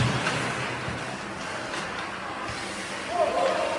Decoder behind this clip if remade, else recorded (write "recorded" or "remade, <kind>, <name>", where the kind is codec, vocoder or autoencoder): recorded